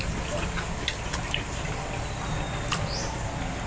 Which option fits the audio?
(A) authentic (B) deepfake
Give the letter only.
A